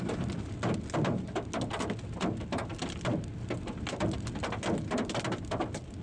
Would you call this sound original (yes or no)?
yes